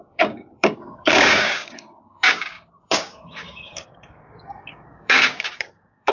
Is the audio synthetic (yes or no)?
yes